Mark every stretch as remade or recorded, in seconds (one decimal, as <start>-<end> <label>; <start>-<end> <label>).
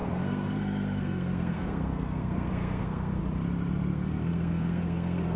0.0-3.2 remade; 3.2-3.9 recorded; 3.9-5.4 remade